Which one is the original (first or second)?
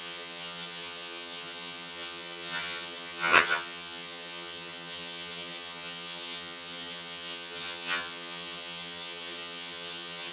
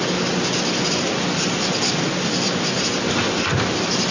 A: second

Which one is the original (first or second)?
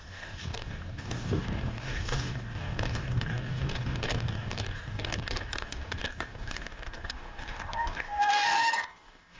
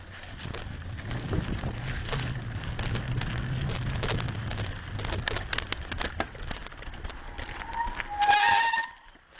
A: second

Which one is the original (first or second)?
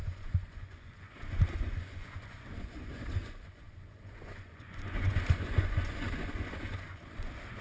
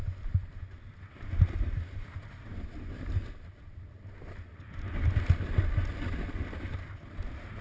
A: second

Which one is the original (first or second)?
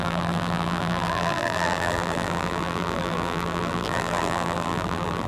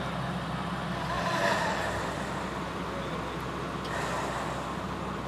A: second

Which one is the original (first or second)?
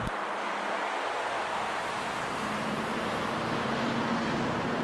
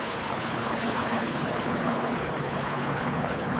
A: first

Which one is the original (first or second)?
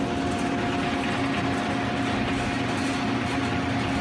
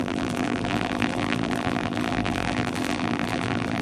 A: first